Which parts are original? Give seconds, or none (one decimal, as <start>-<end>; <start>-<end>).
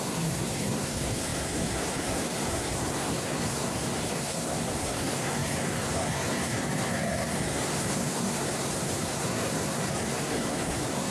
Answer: none